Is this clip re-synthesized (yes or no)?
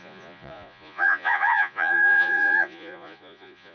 yes